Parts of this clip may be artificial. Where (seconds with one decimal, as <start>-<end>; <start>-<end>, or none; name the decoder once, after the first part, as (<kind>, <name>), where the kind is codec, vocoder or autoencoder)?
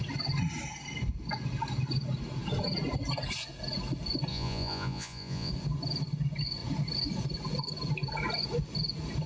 4.3-5.5 (vocoder, Vocos)